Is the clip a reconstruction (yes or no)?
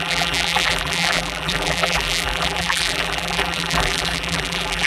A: yes